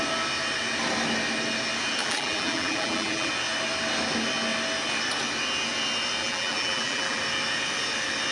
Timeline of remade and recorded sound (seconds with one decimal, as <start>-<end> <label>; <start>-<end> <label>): 0.0-2.0 recorded; 2.0-3.3 remade; 3.3-6.2 recorded; 6.2-7.2 remade; 7.2-8.3 recorded